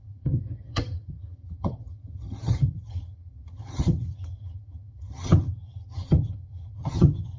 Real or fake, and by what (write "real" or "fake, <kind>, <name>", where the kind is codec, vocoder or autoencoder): fake, vocoder, HiFi-GAN